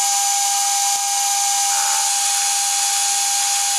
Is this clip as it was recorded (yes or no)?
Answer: yes